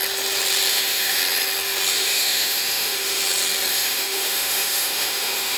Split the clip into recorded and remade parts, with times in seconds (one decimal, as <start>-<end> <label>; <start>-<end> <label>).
0.0-0.7 recorded; 0.7-1.2 remade; 1.2-1.9 recorded; 1.9-3.2 remade; 3.2-3.7 recorded; 3.7-5.6 remade